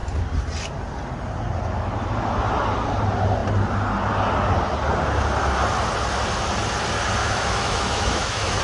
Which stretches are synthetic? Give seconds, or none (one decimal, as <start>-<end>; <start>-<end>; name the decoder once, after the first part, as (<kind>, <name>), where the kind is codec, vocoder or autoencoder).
7.2-8.6 (autoencoder, DAC-VAE)